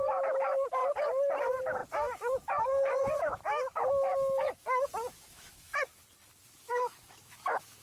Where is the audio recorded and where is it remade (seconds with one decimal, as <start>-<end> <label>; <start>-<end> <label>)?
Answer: 0.0-0.8 remade; 0.8-1.4 recorded; 1.4-5.7 remade; 5.7-6.6 recorded; 6.6-7.8 remade